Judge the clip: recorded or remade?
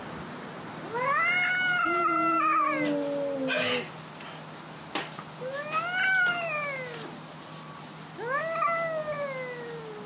recorded